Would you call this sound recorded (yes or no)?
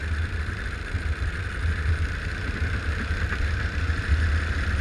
yes